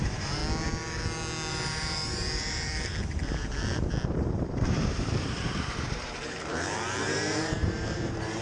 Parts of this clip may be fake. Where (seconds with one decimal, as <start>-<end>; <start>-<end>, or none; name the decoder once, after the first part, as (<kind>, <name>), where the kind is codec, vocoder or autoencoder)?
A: 0.0-0.4 (vocoder, BigVGAN v2); 1.5-8.4